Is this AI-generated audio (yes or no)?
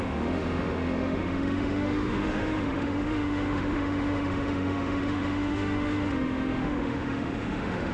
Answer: yes